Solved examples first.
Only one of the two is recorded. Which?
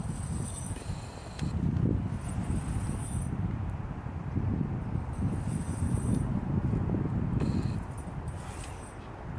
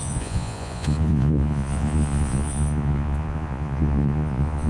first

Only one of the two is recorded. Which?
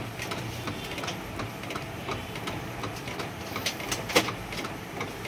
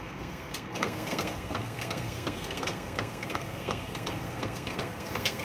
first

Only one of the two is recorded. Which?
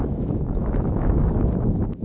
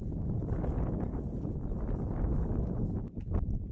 second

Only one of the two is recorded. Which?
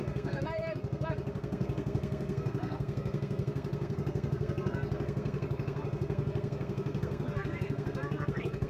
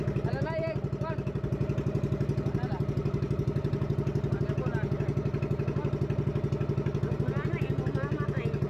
second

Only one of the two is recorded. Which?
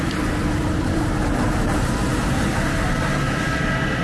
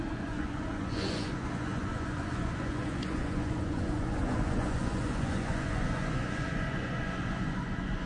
first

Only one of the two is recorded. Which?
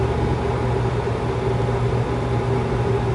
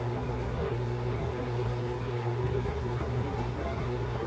first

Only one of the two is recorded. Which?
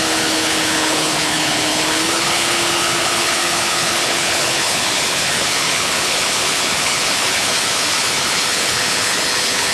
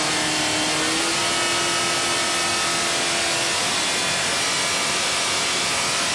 second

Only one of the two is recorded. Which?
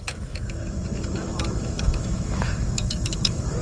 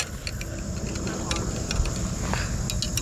second